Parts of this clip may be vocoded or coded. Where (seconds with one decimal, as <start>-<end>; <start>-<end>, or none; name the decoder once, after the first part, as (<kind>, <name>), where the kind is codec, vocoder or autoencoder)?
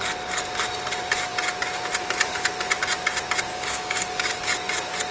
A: 3.5-4.4 (codec, DAC)